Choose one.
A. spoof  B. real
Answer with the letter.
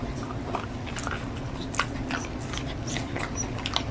B